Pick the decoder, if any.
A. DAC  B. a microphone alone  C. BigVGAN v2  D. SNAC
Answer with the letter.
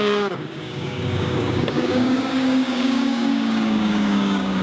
A